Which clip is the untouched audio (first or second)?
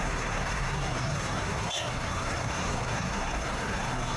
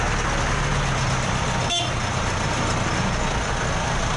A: second